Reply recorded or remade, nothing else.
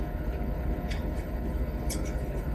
remade